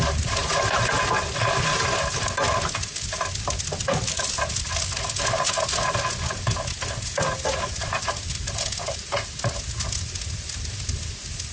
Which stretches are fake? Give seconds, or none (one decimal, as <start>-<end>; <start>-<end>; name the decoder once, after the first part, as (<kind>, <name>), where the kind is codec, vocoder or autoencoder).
none